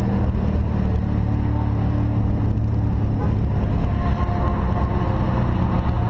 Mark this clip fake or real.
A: real